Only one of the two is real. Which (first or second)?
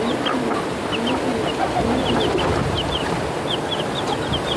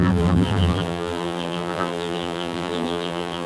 first